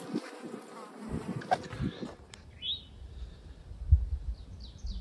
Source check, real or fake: real